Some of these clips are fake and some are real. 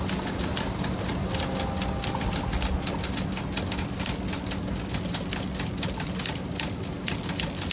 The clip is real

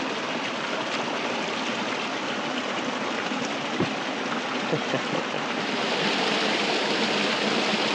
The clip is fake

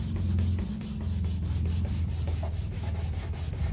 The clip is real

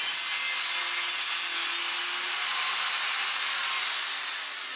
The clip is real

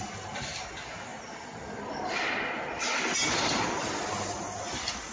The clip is real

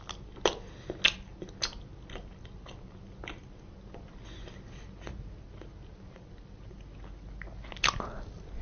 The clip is real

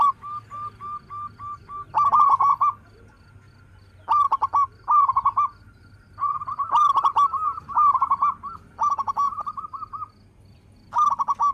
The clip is real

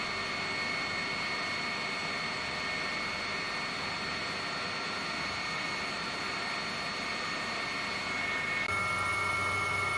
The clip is real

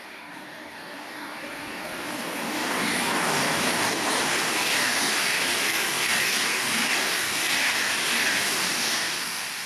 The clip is fake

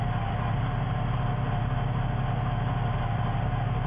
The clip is real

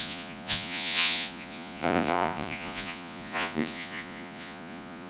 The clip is fake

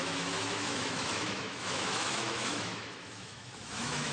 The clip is fake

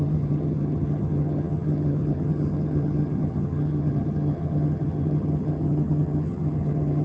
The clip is fake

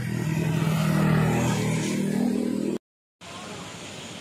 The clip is real